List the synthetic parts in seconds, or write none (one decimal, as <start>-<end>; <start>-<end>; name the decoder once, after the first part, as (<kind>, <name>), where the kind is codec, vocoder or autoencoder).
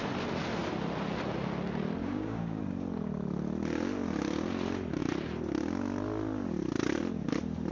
2.0-2.6 (codec, DAC)